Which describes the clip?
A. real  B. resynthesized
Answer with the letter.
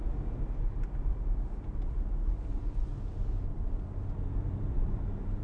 B